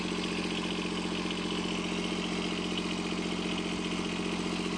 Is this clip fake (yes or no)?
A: no